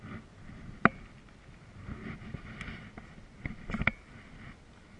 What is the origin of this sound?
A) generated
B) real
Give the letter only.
B